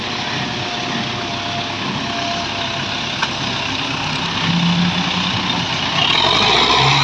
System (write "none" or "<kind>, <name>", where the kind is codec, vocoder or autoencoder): none